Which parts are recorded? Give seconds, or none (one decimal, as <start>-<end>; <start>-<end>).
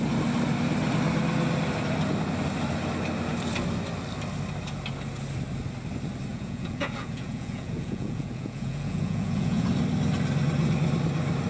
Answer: 0.0-6.3; 9.7-11.5